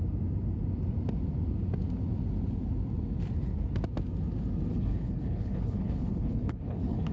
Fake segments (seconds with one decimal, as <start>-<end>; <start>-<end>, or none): 4.7-7.1